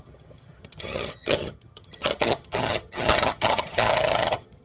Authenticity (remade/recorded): remade